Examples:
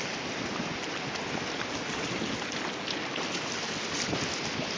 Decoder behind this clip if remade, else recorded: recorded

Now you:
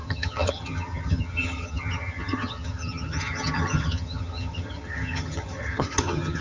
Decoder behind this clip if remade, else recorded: remade, vocoder, HiFi-GAN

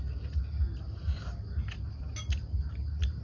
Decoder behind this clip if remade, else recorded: recorded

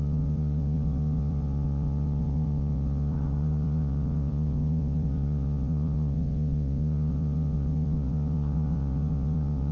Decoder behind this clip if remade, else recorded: remade, vocoder, Vocos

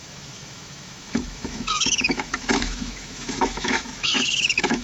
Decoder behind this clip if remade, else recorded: remade, autoencoder, DAC-VAE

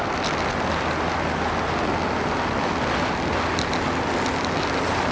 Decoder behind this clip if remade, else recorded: recorded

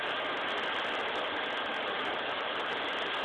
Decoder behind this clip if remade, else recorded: recorded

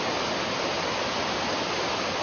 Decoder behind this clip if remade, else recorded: recorded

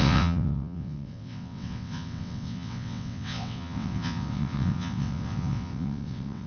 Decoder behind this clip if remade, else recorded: remade, vocoder, WaveNeXt